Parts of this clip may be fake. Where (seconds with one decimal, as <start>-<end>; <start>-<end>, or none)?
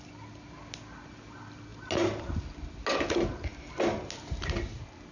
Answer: none